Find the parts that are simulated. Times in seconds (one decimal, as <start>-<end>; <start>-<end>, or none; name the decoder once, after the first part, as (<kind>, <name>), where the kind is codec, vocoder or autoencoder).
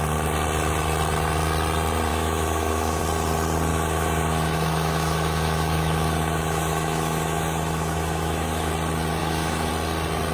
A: 2.1-3.0 (autoencoder, DAC-VAE); 3.7-8.7; 9.2-9.7